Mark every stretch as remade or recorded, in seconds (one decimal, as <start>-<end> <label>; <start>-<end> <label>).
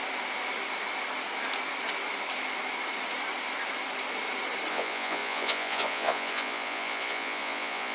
0.0-4.7 recorded; 4.7-7.9 remade